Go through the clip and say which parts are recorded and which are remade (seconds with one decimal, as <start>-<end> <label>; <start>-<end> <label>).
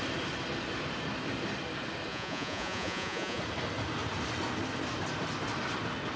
0.0-2.1 recorded; 2.1-3.4 remade; 3.4-6.2 recorded